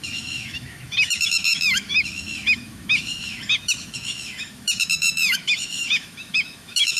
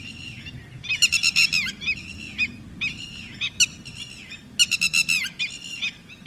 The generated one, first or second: first